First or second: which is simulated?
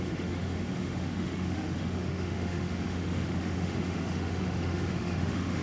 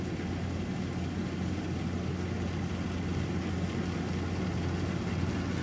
first